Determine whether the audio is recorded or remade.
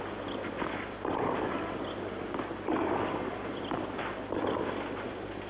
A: recorded